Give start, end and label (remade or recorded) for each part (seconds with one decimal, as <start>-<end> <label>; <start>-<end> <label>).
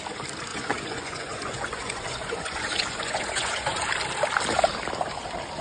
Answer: 0.0-0.5 recorded; 0.5-3.9 remade; 3.9-5.6 recorded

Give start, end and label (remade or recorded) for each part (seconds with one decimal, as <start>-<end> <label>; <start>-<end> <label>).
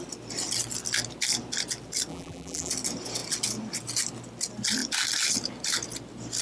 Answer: 0.0-2.1 recorded; 2.1-2.7 remade; 2.7-6.4 recorded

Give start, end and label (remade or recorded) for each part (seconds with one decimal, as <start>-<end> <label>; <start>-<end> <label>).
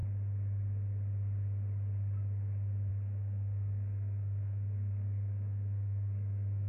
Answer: 0.0-2.9 recorded; 2.9-6.7 remade